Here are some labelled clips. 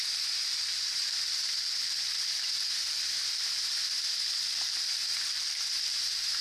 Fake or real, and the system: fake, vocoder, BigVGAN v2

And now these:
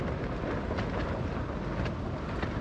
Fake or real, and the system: real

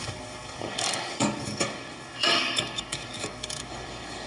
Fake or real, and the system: fake, codec, DAC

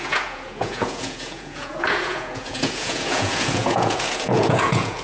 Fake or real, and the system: fake, vocoder, Vocos